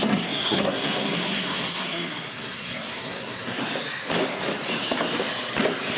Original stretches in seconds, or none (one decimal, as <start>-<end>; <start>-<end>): 3.6-6.0